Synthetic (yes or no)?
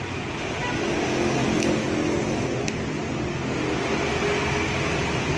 no